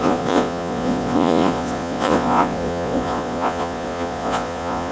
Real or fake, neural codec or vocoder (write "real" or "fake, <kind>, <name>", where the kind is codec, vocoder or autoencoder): fake, vocoder, Vocos